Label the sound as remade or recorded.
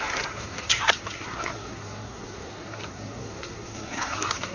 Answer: remade